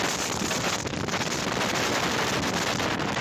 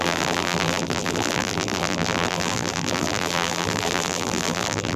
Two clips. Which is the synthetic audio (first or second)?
second